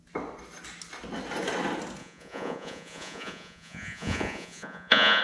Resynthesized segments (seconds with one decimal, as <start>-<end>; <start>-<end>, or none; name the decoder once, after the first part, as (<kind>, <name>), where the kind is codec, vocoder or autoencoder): 2.0-5.2 (vocoder, Vocos)